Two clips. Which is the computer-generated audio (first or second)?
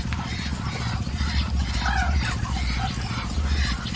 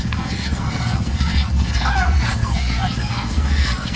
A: second